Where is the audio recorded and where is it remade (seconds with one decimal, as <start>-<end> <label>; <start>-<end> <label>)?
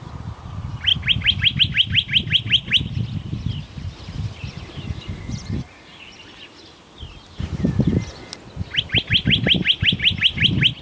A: 0.0-10.8 recorded